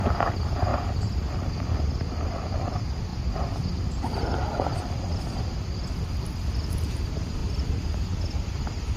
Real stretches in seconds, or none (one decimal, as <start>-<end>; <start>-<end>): 0.0-0.7; 2.7-9.0